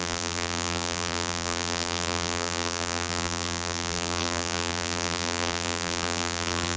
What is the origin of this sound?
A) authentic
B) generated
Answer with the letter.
B